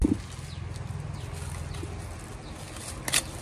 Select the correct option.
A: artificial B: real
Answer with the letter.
B